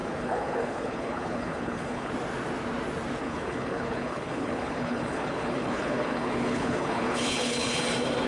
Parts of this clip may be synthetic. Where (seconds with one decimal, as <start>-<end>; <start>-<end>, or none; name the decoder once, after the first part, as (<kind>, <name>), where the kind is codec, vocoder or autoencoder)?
0.0-2.1 (codec, HILCodec); 3.2-7.8